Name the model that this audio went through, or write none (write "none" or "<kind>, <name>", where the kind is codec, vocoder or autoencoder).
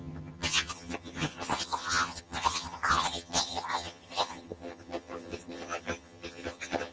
vocoder, HiFi-GAN